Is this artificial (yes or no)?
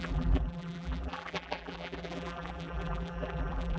yes